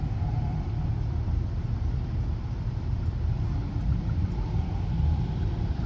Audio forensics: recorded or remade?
remade